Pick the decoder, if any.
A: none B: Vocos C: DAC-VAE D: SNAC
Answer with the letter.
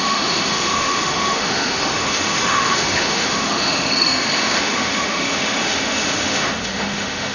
C